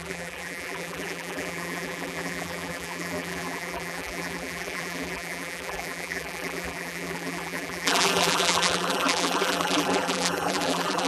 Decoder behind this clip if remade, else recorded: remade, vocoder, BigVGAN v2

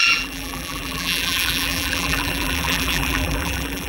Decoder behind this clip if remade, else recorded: remade, vocoder, BigVGAN v2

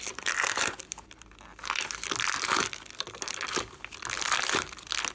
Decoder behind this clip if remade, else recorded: remade, vocoder, BigVGAN v2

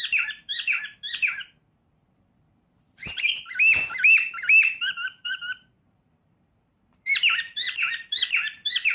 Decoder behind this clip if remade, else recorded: remade, vocoder, BigVGAN v2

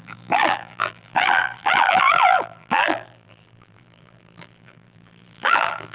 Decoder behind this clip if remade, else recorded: remade, vocoder, BigVGAN v2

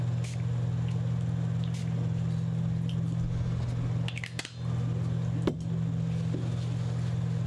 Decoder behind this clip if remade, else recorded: recorded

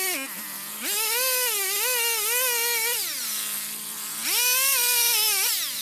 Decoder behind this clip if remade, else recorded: recorded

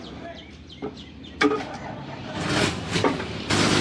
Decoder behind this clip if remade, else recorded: remade, vocoder, BigVGAN v2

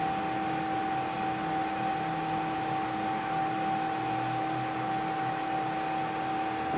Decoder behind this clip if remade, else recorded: recorded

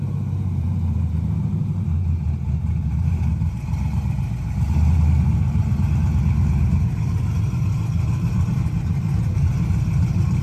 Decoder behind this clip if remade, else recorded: remade, vocoder, BigVGAN v2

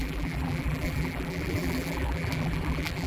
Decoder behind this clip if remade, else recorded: remade, vocoder, BigVGAN v2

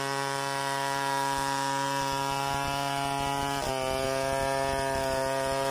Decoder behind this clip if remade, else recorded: recorded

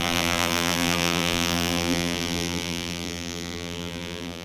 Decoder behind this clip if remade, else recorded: remade, vocoder, BigVGAN v2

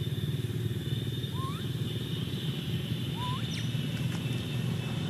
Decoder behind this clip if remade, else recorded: recorded